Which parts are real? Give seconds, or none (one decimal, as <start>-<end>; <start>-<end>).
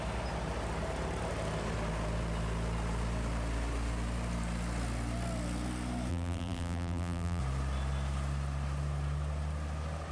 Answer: 0.0-6.1; 7.4-10.1